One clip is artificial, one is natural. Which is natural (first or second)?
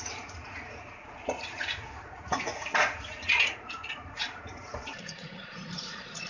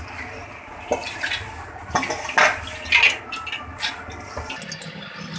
second